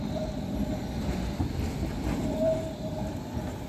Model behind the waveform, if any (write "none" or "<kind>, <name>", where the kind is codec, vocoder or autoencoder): none